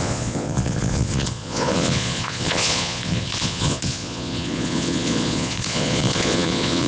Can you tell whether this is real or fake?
fake